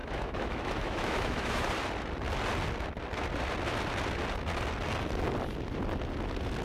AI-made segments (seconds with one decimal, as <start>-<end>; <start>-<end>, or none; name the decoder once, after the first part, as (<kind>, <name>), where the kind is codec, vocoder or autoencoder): 0.0-1.7 (autoencoder, DAC-VAE)